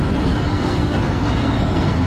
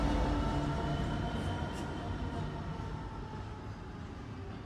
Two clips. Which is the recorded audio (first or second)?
second